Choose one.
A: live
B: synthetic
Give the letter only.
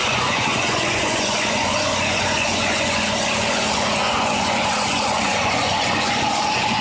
B